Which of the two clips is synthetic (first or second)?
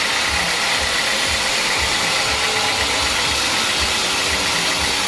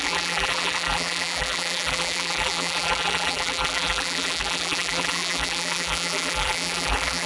second